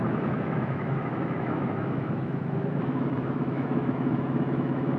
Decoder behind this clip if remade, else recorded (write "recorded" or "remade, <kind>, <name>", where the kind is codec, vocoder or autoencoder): remade, autoencoder, DAC-VAE